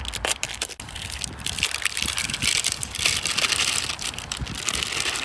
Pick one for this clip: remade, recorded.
recorded